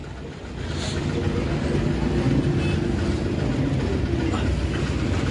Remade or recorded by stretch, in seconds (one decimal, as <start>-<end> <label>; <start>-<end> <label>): 0.0-5.3 recorded